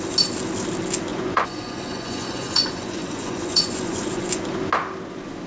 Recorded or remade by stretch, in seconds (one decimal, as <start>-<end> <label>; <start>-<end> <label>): 0.0-1.1 recorded; 1.1-4.4 remade; 4.4-5.5 recorded